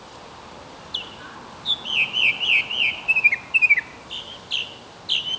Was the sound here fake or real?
real